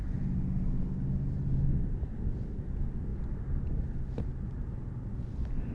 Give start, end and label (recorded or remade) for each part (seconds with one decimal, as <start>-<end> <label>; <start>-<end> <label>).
0.0-5.7 recorded